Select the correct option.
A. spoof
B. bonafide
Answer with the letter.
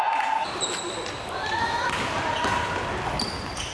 B